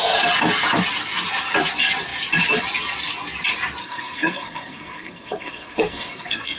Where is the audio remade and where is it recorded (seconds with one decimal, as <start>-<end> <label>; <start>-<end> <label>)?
0.0-3.8 recorded; 3.8-6.6 remade